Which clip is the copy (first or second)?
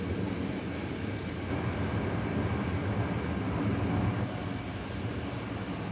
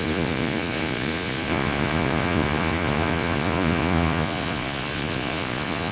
second